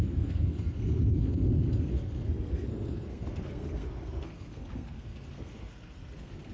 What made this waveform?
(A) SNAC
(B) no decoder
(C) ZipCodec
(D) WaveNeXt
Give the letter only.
A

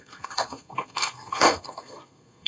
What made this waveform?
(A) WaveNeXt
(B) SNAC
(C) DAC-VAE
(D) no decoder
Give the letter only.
B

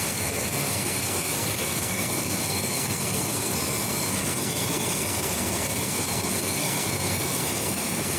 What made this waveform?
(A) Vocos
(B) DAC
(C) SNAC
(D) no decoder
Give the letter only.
C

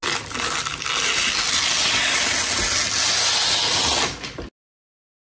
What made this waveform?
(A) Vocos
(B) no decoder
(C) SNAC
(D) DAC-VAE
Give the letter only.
B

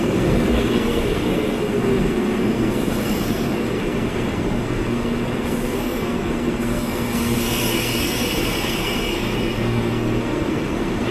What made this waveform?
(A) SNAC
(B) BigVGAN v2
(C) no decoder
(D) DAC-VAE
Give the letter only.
A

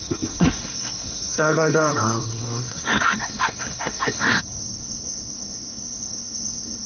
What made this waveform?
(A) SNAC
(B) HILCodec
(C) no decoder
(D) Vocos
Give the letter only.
A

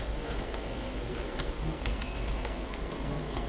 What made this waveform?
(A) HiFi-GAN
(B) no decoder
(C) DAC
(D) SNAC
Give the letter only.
D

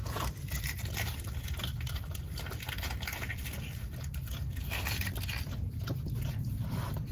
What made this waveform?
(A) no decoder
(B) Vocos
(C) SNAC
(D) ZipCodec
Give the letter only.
A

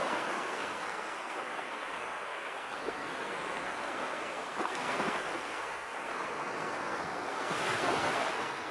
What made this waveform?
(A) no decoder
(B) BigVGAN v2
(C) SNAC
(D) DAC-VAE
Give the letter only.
C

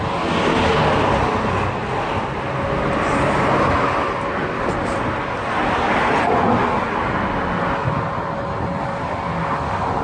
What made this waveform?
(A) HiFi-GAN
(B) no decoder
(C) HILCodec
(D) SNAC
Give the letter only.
B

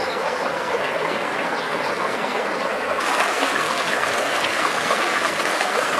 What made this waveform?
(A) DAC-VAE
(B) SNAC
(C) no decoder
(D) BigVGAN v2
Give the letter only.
B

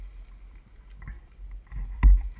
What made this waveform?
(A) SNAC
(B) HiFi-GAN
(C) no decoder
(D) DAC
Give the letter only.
C